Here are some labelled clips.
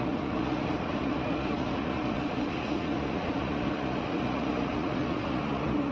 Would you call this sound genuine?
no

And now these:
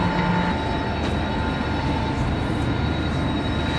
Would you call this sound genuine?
yes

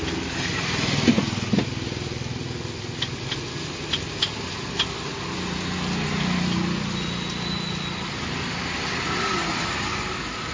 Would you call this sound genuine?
yes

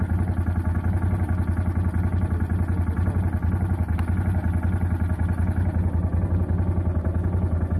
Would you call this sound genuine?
yes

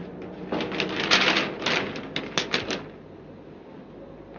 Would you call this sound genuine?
yes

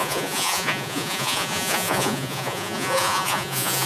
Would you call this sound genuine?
no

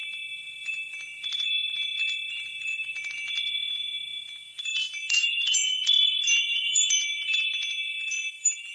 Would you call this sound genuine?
no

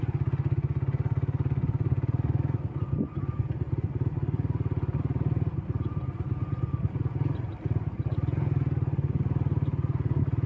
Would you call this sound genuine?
yes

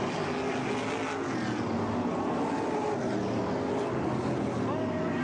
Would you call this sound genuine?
yes